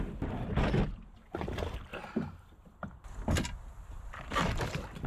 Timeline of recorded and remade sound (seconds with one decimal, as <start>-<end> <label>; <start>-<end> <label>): 0.0-1.9 recorded; 1.9-5.1 remade